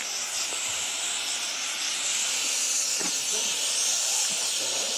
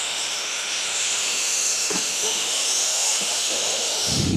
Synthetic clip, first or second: second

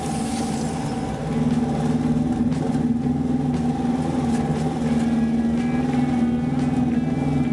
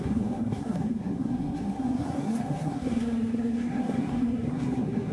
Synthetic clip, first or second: second